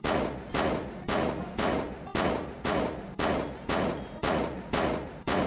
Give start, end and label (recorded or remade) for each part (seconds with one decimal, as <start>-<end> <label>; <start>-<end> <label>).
0.0-5.5 remade